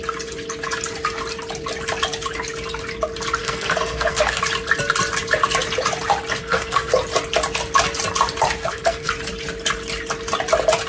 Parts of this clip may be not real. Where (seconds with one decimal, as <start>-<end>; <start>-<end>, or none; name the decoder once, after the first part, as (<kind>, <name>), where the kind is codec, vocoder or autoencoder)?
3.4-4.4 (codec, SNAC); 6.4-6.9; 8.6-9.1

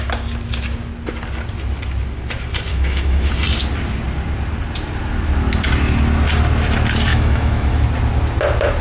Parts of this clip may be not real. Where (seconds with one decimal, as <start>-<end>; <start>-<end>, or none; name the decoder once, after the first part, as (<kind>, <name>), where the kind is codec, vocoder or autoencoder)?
2.7-3.3 (autoencoder, DAC-VAE); 7.1-7.8

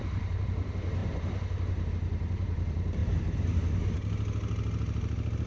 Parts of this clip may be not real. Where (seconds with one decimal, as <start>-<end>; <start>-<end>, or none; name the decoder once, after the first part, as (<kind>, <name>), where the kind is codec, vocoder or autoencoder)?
0.0-3.0 (vocoder, BigVGAN v2)

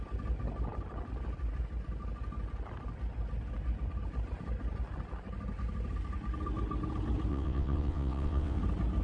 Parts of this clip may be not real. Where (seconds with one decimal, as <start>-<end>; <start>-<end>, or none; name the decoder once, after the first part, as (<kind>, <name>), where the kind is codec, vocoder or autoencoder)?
7.3-8.6 (vocoder, WaveNeXt)

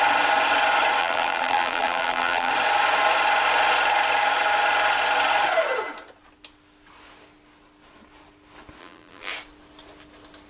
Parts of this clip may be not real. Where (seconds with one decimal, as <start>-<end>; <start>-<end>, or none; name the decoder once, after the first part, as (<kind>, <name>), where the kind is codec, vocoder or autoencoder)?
1.0-2.5 (vocoder, BigVGAN v2); 8.8-9.3

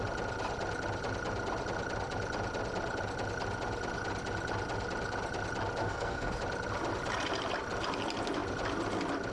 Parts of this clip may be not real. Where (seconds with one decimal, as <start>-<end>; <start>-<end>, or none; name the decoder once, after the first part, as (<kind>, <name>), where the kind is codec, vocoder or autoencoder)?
5.8-6.4 (codec, SNAC)